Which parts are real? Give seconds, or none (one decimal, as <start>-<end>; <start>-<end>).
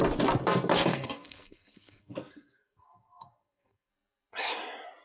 0.0-0.9; 3.9-5.0